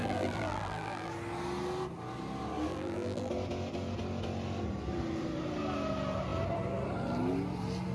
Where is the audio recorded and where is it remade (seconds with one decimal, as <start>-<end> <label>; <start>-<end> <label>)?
0.0-1.1 remade; 1.1-2.7 recorded; 2.7-3.3 remade; 3.3-7.9 recorded